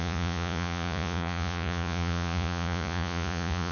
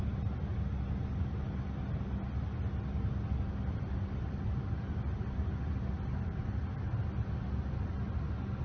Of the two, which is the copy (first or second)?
first